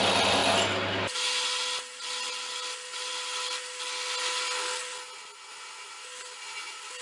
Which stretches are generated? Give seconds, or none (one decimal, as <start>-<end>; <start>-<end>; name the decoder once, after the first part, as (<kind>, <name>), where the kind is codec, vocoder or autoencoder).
none